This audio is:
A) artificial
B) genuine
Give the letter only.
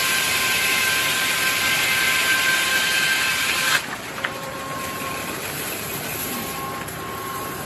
A